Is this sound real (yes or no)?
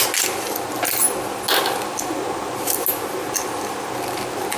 yes